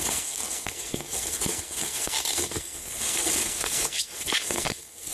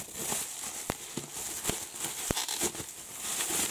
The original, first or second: second